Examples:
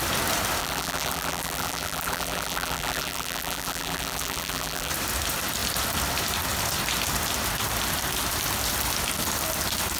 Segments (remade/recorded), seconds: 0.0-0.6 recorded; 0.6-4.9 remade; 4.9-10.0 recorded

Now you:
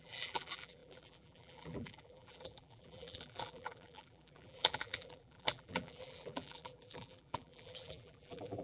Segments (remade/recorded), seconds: 0.0-8.6 remade

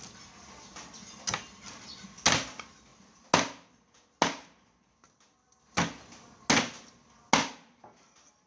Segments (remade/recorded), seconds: 0.0-8.5 recorded

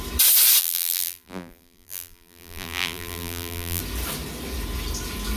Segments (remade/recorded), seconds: 0.0-0.6 recorded; 0.6-3.8 remade; 3.8-5.4 recorded

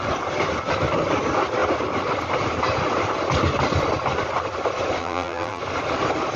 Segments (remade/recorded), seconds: 0.0-5.0 recorded; 5.0-5.6 remade; 5.6-6.4 recorded

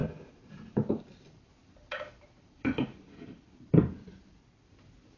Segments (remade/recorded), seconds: 0.0-5.2 remade